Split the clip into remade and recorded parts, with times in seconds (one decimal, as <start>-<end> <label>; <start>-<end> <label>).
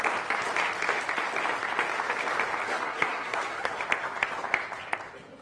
0.0-2.7 recorded; 2.7-3.8 remade; 3.8-5.4 recorded